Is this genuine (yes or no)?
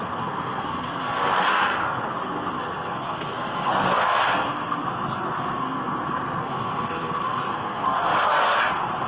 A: no